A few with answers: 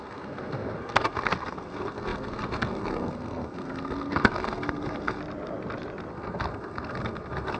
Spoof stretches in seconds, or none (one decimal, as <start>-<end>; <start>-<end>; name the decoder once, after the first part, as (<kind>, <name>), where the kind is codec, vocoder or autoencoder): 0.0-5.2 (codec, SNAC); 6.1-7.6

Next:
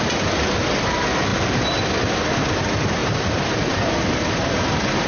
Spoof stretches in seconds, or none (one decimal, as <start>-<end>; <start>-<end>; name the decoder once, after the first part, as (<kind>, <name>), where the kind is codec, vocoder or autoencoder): 1.3-1.8 (vocoder, BigVGAN v2); 3.0-5.1

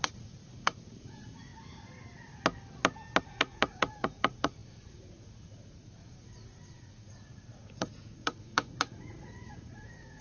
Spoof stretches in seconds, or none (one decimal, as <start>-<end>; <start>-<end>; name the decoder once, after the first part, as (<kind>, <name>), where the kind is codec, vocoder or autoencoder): 0.0-1.5 (vocoder, Vocos); 3.2-10.2

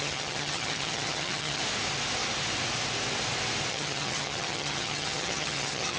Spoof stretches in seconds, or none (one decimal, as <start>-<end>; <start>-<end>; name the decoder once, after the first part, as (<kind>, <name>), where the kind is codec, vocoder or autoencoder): 0.0-1.6 (vocoder, HiFi-GAN); 3.7-6.0

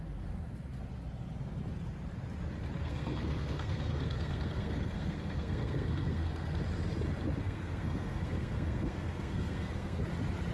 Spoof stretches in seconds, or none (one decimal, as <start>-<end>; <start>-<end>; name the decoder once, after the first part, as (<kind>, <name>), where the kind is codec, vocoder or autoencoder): 2.8-6.6 (codec, SNAC); 7.4-10.0

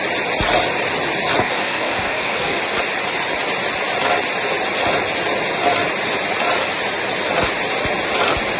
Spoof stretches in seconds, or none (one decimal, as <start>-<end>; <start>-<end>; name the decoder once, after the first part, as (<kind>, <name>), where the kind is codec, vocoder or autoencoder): 1.4-2.6 (codec, DAC)

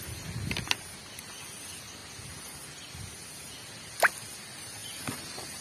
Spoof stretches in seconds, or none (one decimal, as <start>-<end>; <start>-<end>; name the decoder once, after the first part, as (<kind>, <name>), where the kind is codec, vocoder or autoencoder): 4.8-5.6 (vocoder, BigVGAN v2)